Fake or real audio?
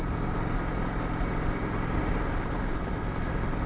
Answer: real